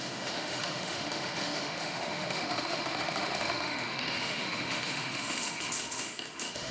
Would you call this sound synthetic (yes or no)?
yes